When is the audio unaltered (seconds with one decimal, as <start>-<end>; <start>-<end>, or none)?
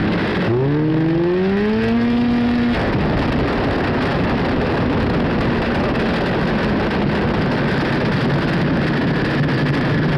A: 0.0-10.2